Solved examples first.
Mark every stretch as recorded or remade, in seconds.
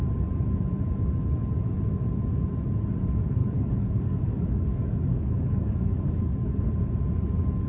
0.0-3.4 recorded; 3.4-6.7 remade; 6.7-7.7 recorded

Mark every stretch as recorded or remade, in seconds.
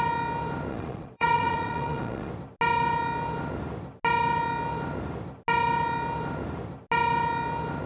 0.0-0.7 recorded; 0.7-2.3 remade; 2.3-7.9 recorded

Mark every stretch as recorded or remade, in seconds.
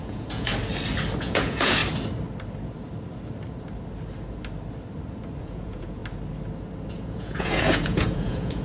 0.0-0.5 remade; 0.5-1.2 recorded; 1.2-1.8 remade; 1.8-5.4 recorded; 5.4-6.0 remade; 6.0-6.9 recorded; 6.9-8.6 remade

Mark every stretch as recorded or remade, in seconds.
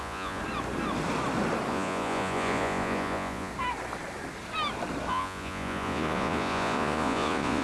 0.0-0.4 remade; 0.4-1.7 recorded; 1.7-3.5 remade; 3.5-5.1 recorded; 5.1-7.6 remade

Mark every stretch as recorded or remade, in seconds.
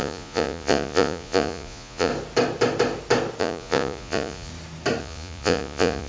0.0-2.1 remade; 2.1-3.4 recorded; 3.4-4.5 remade; 4.5-5.0 recorded; 5.0-6.1 remade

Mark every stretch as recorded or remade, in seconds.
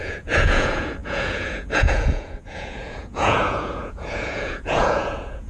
0.0-5.5 remade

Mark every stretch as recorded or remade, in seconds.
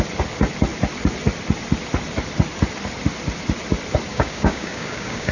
0.0-4.1 recorded; 4.1-5.3 remade